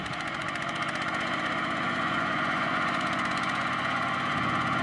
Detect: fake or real fake